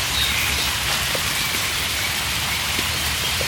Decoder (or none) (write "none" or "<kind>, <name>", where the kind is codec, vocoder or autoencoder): vocoder, BigVGAN v2